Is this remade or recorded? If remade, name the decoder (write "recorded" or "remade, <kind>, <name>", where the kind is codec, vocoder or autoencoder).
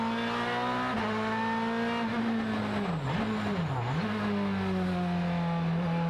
recorded